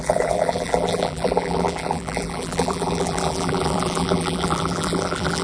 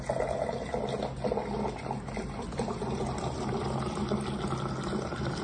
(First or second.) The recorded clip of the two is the second